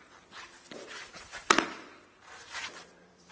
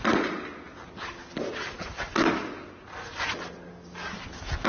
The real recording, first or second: second